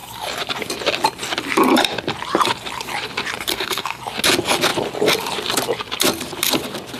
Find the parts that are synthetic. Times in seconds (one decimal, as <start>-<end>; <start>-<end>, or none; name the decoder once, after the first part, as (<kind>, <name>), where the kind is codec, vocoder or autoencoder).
3.5-4.0 (codec, SNAC)